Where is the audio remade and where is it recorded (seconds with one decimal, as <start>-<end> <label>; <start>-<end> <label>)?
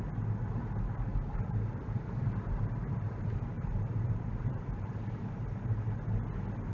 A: 0.0-1.1 recorded; 1.1-5.0 remade; 5.0-6.7 recorded